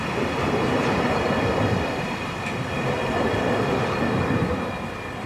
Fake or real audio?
real